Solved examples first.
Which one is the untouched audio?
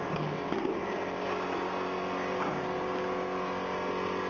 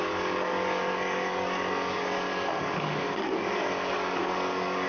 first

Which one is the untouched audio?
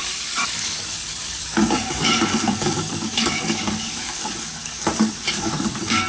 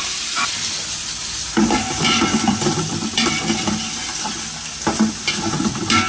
second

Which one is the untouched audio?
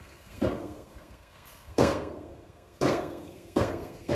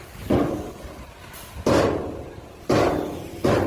second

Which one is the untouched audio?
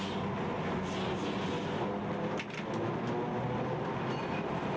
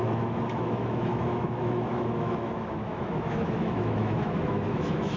first